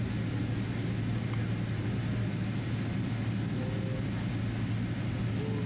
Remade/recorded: recorded